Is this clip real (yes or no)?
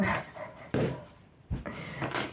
no